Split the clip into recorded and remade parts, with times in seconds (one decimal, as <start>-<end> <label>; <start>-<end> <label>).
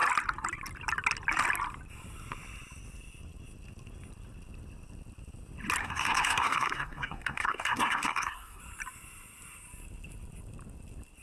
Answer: 0.0-5.8 recorded; 5.8-8.6 remade; 8.6-11.2 recorded